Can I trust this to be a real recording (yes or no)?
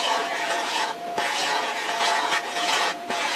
no